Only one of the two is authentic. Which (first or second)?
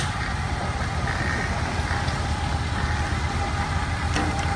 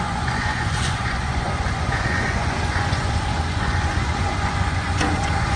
first